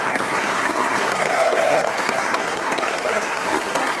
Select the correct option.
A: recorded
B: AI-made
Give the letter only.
B